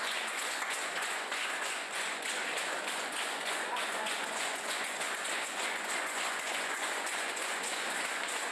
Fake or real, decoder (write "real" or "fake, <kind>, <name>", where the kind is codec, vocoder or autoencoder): fake, vocoder, Vocos